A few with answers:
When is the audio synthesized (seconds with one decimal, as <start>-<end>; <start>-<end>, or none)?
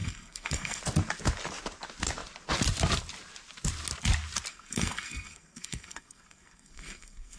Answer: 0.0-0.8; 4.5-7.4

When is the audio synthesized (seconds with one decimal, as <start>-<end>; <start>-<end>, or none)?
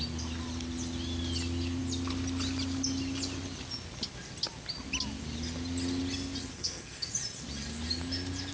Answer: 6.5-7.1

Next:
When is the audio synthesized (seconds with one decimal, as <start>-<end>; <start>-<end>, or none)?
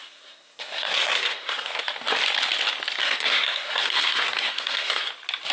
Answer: 0.0-1.8; 3.0-5.1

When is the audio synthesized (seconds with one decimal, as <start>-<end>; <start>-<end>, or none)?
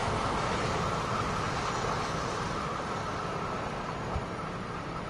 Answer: none